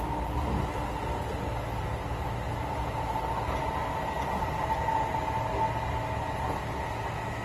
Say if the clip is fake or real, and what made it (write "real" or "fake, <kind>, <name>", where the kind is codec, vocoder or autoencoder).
real